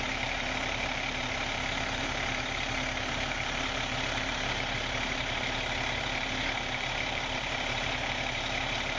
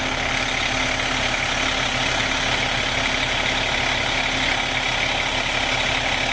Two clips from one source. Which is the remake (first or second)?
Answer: first